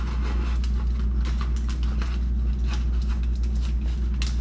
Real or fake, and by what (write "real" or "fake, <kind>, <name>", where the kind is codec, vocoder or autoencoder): real